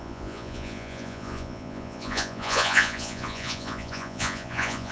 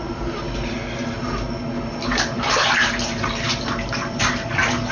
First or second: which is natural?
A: second